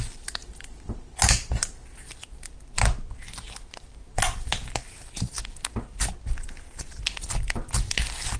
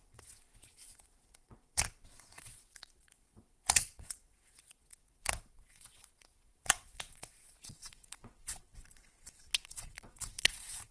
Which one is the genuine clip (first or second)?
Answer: first